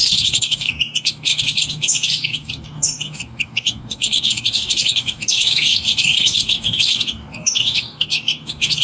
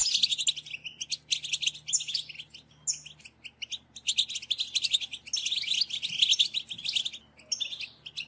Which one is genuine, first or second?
second